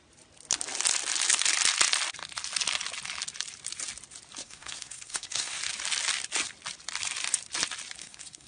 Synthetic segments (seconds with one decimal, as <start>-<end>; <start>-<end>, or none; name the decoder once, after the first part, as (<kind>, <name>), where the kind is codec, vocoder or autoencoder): 4.4-5.6 (codec, SNAC); 8.0-8.5